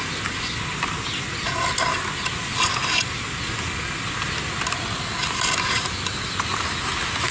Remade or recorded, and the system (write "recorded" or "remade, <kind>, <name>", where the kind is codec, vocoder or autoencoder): recorded